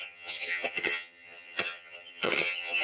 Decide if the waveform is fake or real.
fake